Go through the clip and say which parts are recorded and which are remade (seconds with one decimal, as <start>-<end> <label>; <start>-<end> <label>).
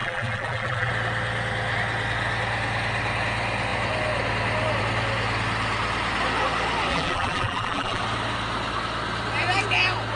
0.0-0.9 remade; 0.9-6.9 recorded; 6.9-8.0 remade; 8.0-10.2 recorded